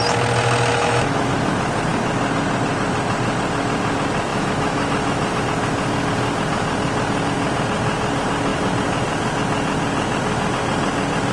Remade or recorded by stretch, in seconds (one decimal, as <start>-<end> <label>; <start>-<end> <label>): 0.0-0.7 recorded; 0.7-1.3 remade; 1.3-4.3 recorded; 4.3-5.4 remade; 5.4-11.3 recorded